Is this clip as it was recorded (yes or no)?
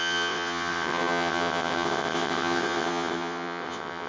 no